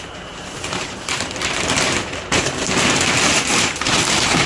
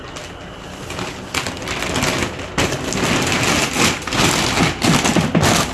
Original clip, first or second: second